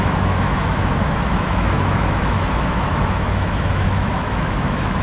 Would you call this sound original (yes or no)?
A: no